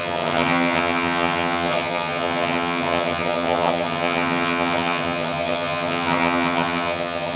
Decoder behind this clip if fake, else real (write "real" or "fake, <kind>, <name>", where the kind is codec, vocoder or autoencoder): fake, vocoder, HiFi-GAN